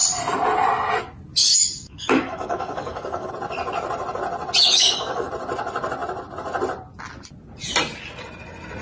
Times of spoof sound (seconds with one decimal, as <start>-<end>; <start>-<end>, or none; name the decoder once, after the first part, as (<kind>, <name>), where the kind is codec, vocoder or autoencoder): 1.4-3.3 (codec, DAC); 4.6-5.3